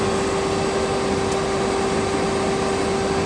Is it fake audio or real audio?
real